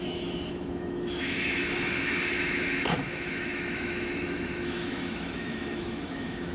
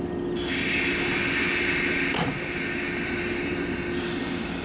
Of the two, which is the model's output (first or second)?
first